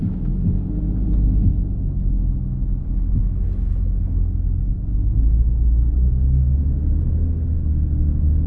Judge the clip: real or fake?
real